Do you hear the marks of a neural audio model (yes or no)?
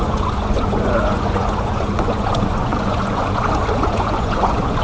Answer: yes